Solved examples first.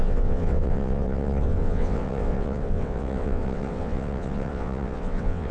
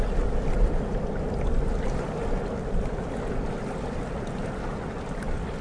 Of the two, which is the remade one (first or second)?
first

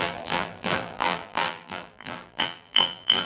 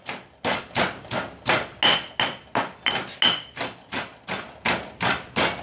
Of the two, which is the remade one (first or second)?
first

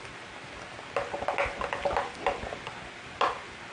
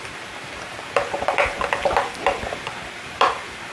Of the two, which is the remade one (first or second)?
second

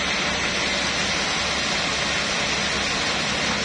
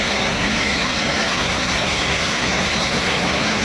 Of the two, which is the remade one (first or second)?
second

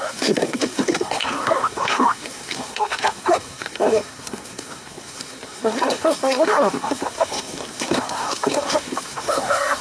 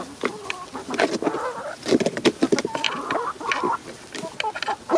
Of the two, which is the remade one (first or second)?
first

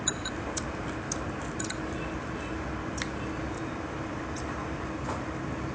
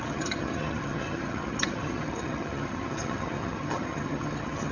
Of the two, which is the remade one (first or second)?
second